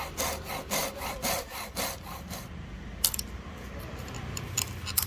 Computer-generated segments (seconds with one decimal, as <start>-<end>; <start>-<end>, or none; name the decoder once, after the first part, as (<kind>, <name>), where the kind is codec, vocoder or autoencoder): none